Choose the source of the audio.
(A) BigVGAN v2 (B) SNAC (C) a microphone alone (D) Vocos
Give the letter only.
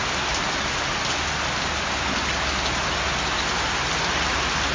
C